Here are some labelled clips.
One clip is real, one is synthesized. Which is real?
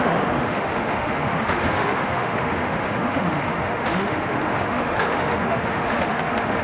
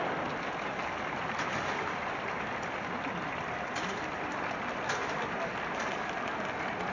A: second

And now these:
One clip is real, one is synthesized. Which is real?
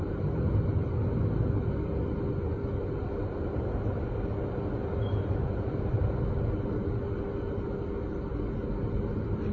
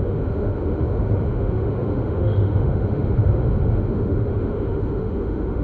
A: first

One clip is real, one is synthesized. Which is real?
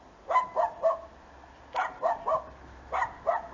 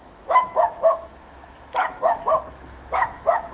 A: first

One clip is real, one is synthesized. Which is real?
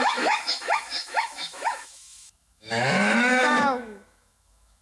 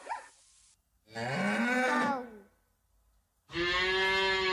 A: second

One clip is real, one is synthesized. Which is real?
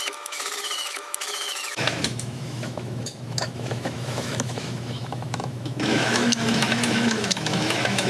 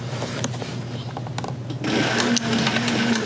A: second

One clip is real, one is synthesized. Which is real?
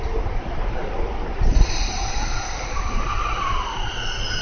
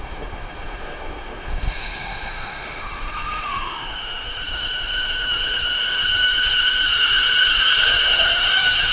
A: first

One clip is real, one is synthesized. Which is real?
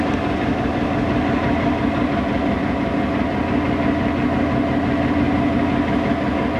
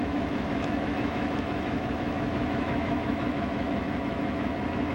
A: first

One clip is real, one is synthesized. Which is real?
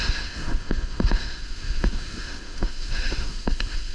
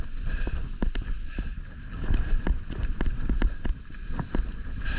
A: second